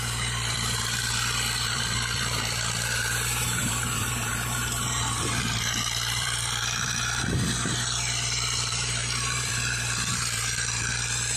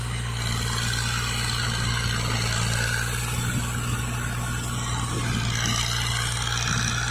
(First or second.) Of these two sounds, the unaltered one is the second